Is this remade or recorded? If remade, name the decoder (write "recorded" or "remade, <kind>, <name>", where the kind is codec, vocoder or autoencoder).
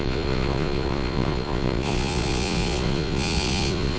remade, vocoder, Vocos